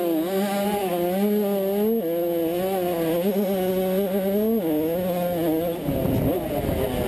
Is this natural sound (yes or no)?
yes